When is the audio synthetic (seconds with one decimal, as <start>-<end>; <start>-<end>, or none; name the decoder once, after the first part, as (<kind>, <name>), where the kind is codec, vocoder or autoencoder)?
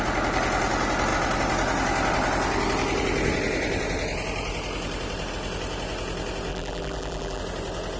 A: 6.5-7.4 (vocoder, BigVGAN v2)